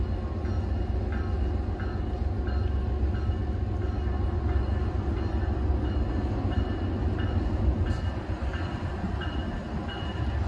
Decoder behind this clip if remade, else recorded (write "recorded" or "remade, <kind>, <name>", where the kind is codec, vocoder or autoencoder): recorded